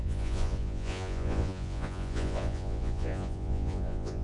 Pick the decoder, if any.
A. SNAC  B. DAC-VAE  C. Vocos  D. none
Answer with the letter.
C